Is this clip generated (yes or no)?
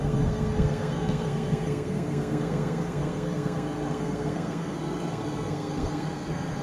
yes